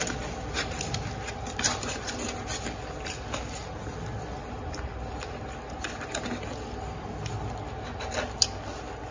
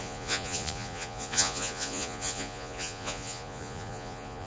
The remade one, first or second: second